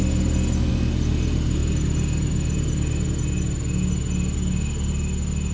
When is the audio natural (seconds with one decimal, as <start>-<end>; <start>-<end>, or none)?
0.0-5.5